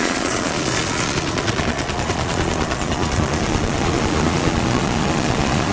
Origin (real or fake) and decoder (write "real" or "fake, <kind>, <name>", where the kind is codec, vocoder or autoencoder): fake, vocoder, Vocos